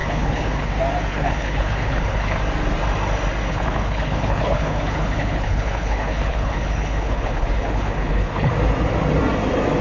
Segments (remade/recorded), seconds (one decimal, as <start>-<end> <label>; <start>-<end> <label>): 0.0-0.7 remade; 0.7-1.1 recorded; 1.1-2.4 remade; 2.4-3.5 recorded; 3.5-8.5 remade; 8.5-9.8 recorded